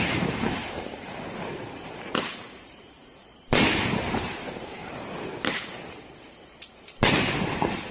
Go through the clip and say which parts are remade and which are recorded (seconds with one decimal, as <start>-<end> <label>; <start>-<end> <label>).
0.0-7.9 remade